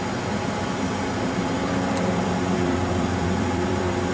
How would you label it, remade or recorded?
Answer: remade